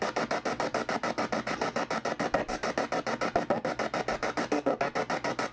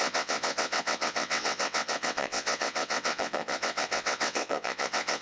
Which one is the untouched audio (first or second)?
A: first